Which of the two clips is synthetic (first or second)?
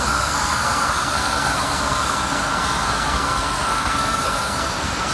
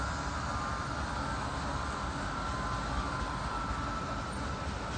first